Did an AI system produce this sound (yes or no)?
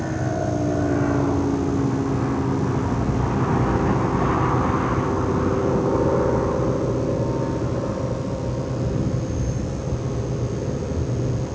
no